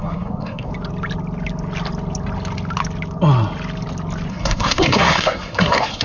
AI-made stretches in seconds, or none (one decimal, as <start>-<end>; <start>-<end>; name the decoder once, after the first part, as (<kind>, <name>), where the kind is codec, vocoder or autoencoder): 0.0-0.7 (codec, SNAC); 4.3-6.0